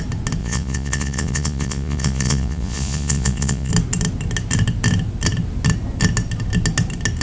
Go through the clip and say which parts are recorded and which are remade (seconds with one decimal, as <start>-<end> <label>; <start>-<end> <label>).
0.0-0.4 recorded; 0.4-3.7 remade; 3.7-7.2 recorded